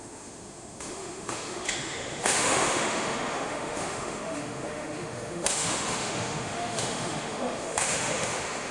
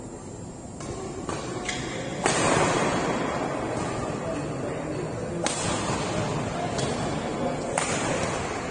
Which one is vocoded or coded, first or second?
first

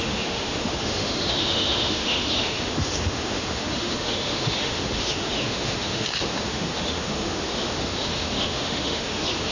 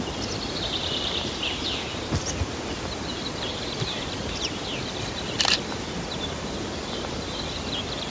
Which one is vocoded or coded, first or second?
first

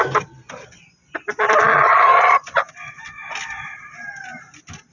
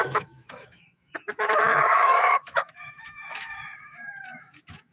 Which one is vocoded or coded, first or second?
second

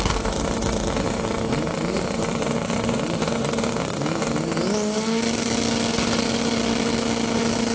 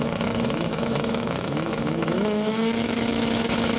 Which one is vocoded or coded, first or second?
second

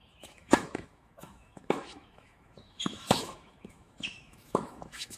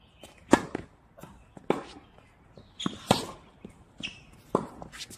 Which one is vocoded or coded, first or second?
first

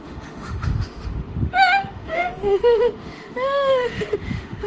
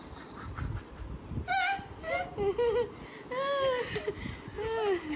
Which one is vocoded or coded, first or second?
first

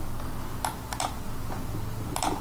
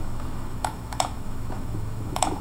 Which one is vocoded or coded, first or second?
second